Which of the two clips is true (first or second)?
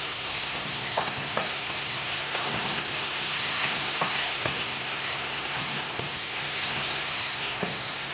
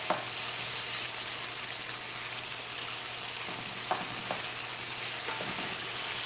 second